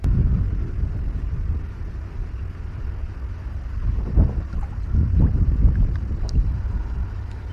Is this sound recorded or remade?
recorded